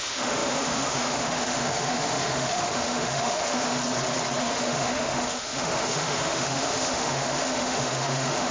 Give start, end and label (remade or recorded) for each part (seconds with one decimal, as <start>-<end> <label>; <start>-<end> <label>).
0.0-3.8 remade; 3.8-4.4 recorded; 4.4-8.5 remade